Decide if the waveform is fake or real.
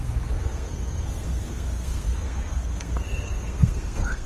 fake